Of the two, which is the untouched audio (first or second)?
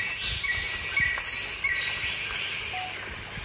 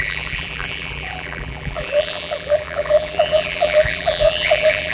first